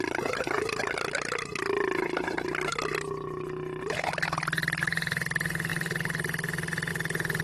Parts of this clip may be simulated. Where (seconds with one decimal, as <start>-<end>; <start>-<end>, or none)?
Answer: none